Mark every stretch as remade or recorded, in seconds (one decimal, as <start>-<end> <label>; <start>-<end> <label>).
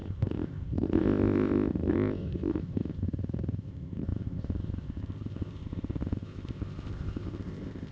0.0-7.9 remade